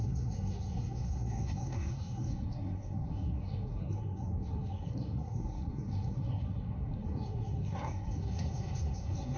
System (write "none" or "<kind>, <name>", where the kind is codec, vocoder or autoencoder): codec, SNAC